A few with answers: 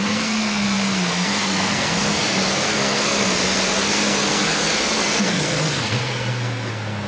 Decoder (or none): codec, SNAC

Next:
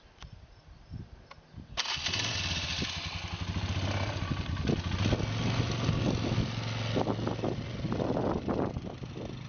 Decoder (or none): none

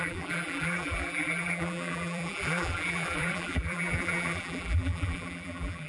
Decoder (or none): vocoder, BigVGAN v2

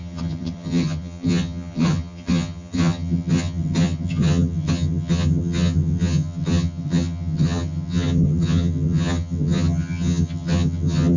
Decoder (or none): vocoder, HiFi-GAN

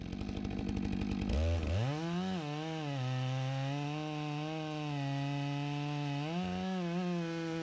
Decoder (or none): none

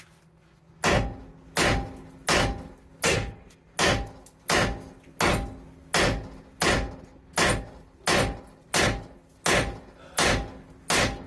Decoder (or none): none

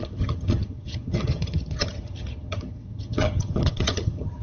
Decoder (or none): vocoder, HiFi-GAN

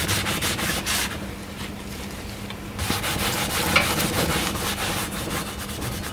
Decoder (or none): none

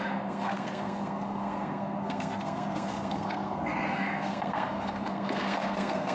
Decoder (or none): codec, SNAC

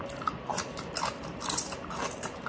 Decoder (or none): none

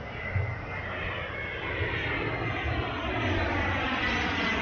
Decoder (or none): none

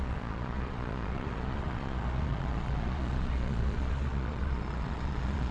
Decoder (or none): vocoder, Vocos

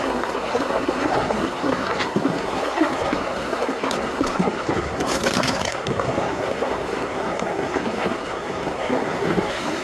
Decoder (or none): codec, SNAC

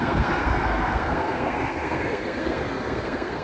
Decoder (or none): codec, SNAC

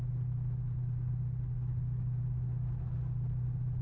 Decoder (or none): none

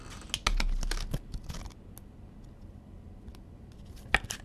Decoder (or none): none